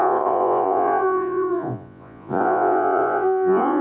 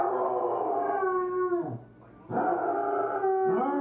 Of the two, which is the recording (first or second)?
second